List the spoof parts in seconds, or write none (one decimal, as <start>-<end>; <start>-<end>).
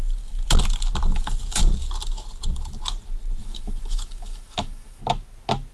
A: 3.4-5.0